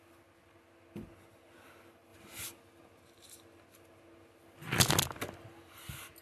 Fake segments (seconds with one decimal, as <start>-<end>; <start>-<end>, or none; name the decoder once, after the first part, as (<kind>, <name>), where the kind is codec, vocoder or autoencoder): none